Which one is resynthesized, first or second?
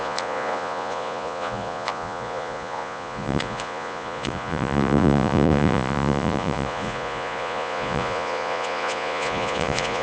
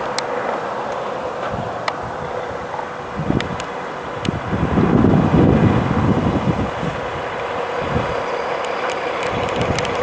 first